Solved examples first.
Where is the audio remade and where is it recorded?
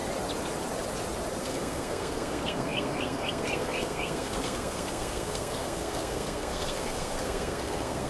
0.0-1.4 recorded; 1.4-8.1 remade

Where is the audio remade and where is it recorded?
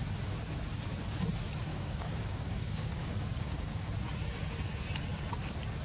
0.0-1.7 recorded; 1.7-3.9 remade; 3.9-5.8 recorded